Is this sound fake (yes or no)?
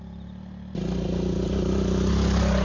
no